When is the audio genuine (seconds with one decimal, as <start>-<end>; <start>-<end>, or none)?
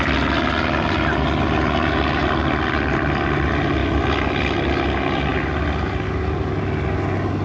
0.0-7.4